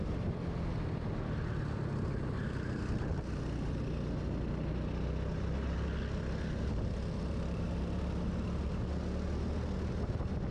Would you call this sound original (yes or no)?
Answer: yes